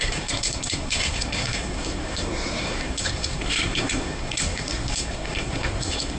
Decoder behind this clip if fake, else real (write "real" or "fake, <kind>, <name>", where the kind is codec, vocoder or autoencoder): fake, codec, SNAC